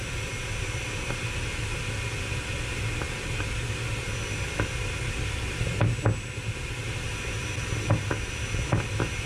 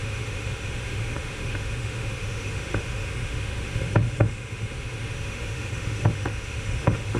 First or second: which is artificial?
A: second